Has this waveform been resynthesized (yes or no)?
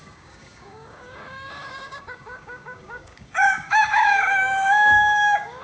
yes